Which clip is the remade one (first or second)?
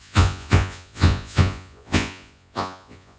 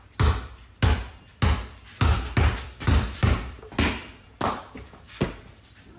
first